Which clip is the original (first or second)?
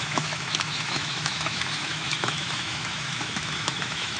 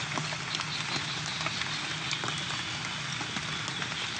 second